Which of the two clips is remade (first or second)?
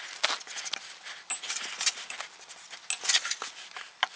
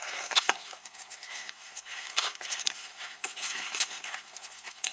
second